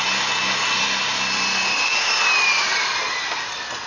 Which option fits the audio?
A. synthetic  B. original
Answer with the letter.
B